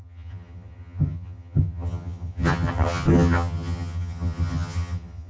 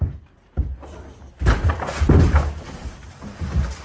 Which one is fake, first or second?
first